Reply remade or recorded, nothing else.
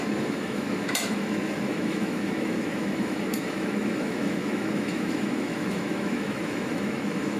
remade